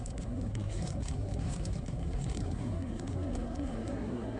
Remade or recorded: remade